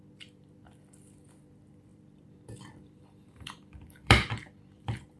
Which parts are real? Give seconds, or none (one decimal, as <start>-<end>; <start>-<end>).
none